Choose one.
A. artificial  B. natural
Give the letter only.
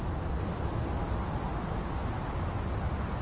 B